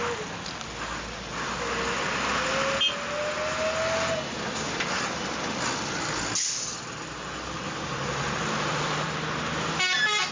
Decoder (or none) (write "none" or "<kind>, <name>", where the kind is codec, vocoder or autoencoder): none